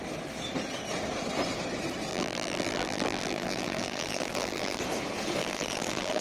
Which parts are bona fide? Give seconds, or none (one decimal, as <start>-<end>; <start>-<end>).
0.0-2.1; 4.8-5.4